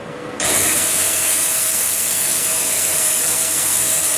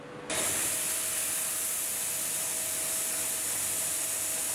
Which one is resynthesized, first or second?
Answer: first